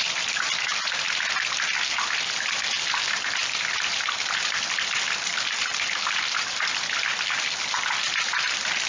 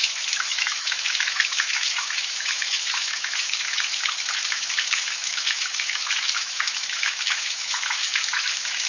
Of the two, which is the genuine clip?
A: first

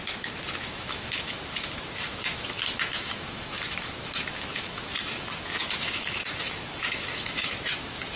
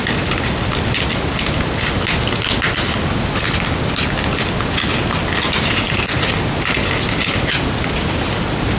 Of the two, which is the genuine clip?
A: second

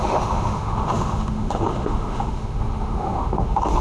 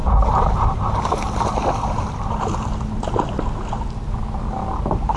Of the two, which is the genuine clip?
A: second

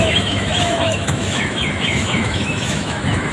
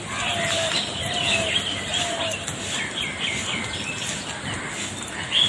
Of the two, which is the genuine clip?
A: second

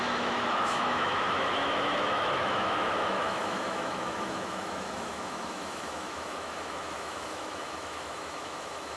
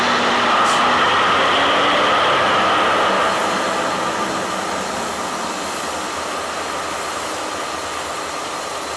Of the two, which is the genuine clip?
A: second